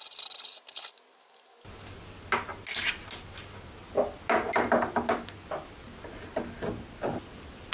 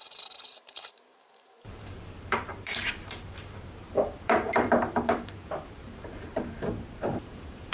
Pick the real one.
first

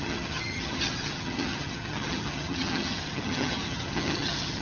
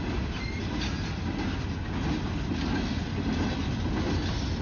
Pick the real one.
second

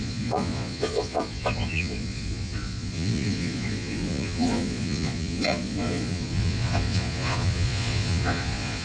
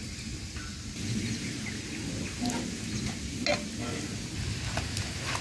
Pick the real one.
second